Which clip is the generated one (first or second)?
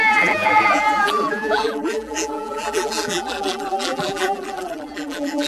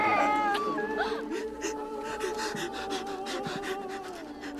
first